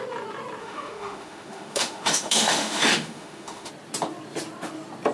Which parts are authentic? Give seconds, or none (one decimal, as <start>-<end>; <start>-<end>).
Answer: 0.0-0.6; 3.7-5.1